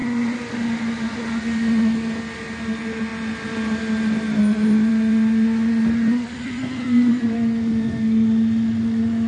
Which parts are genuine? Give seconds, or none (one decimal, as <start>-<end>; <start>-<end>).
0.0-9.3